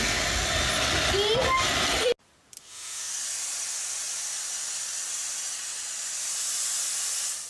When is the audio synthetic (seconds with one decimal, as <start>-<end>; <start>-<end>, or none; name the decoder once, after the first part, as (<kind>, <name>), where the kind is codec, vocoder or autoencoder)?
2.6-3.1 (autoencoder, DAC-VAE)